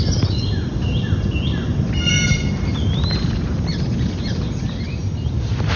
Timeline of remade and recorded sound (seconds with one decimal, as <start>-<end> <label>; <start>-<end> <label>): 0.0-2.7 recorded; 2.7-4.4 remade; 4.4-5.8 recorded